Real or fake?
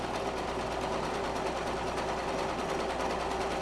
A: real